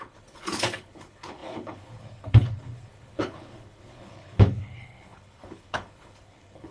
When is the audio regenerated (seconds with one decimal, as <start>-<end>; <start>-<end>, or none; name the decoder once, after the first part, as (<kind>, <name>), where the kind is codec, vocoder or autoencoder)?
0.0-6.7 (codec, HILCodec)